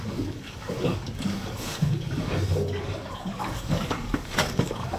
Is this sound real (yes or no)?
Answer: no